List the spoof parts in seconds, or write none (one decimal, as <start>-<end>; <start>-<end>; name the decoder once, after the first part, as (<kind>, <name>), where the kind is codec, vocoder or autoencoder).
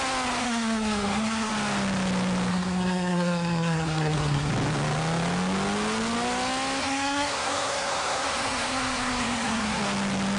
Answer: 0.4-1.5 (codec, SNAC); 2.5-4.5; 6.8-9.8